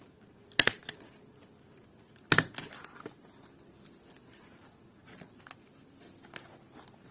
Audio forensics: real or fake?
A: real